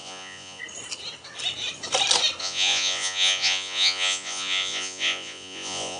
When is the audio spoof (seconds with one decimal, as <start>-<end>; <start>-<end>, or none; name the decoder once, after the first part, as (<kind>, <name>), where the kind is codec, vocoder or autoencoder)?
0.0-0.6 (vocoder, Vocos); 2.4-6.0